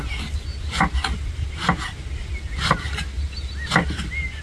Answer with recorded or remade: recorded